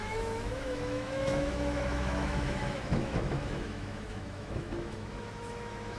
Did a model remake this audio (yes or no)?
yes